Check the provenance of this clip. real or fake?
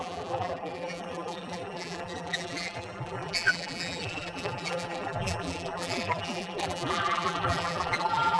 fake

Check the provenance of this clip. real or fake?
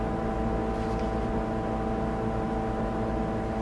real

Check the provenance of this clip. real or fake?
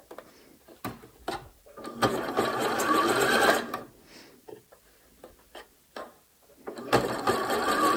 real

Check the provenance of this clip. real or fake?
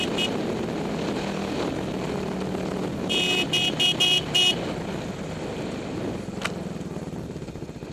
real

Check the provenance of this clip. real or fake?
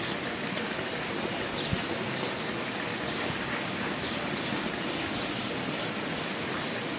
real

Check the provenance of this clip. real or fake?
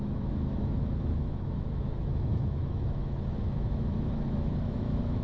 fake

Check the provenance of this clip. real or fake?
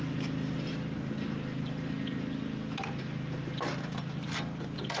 real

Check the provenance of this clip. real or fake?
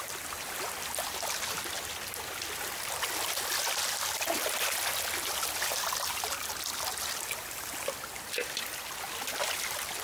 real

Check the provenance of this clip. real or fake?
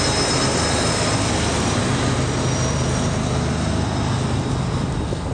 real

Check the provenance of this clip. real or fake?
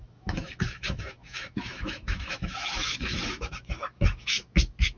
fake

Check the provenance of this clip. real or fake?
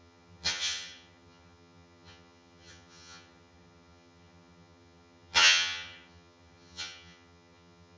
fake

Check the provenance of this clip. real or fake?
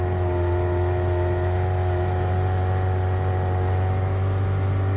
real